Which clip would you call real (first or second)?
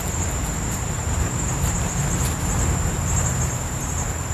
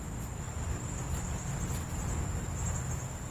second